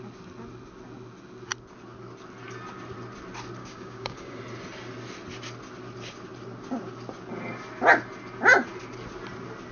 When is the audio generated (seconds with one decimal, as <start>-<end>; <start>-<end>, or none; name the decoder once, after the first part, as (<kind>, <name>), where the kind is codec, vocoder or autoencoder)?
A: 3.6-4.4 (codec, DAC)